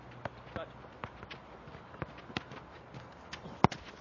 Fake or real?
real